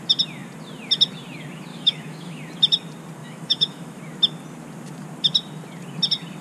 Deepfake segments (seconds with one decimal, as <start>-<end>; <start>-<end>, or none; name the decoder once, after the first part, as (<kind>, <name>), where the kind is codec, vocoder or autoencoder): 1.7-2.4 (autoencoder, DAC-VAE); 3.2-4.0